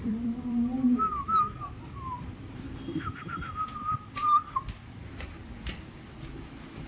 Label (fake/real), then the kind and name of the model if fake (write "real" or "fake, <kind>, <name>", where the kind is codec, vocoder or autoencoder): fake, vocoder, BigVGAN v2